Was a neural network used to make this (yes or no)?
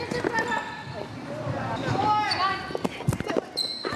no